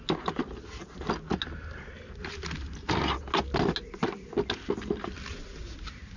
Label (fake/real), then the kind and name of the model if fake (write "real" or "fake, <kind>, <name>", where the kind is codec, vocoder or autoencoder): real